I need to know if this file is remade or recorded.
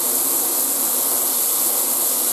recorded